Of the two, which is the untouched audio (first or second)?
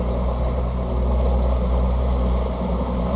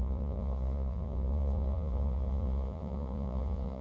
first